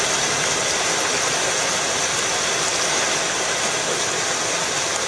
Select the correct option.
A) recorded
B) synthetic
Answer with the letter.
A